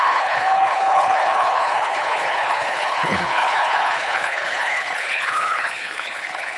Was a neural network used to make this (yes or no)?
yes